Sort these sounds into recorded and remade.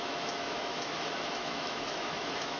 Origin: remade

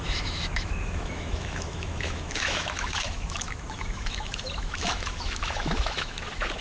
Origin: remade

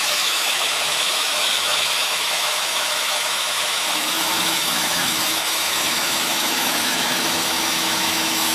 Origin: remade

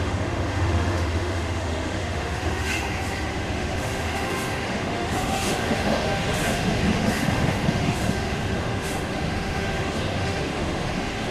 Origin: remade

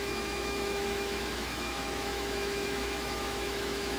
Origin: remade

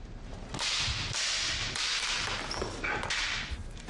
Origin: recorded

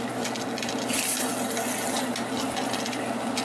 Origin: recorded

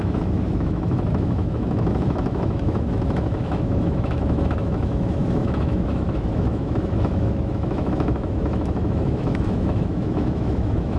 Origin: remade